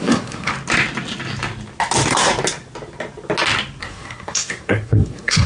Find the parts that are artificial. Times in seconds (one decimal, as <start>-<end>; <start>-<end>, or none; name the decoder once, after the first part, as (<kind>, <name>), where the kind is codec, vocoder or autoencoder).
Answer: 0.0-0.5 (codec, SNAC); 3.8-5.5